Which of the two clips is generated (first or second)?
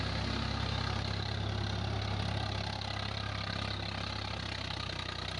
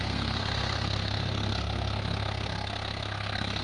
second